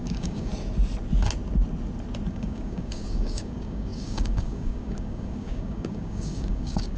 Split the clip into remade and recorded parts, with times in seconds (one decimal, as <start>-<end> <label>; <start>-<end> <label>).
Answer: 0.0-0.5 remade; 0.5-2.3 recorded; 2.3-7.0 remade